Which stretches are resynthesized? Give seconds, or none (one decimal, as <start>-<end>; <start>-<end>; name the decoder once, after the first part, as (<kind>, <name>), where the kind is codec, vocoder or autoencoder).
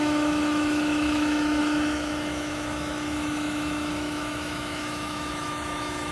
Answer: 0.0-6.1 (autoencoder, DAC-VAE)